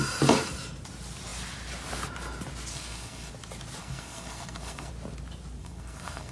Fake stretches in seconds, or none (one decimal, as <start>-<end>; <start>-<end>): 2.7-3.3; 3.8-4.9; 5.6-6.3